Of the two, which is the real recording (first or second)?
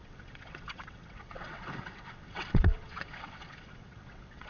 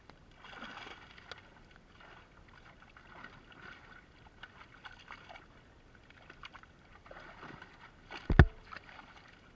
second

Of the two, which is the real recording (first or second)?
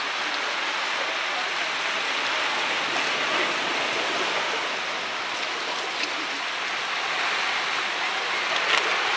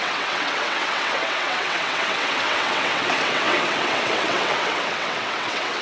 first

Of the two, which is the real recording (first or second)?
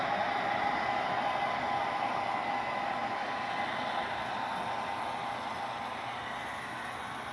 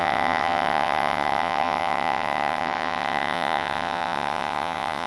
first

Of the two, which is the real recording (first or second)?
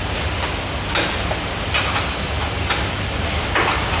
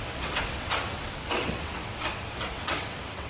first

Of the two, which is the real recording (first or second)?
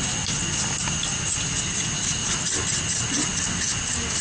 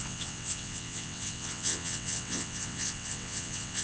first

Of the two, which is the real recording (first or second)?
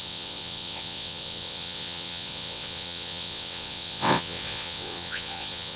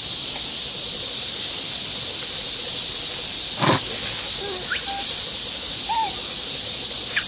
second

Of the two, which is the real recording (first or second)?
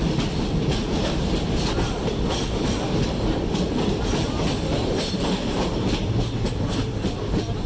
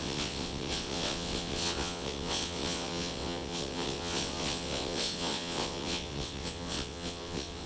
first